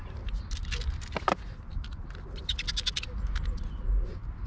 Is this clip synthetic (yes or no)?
no